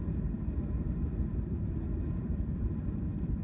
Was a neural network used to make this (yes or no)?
no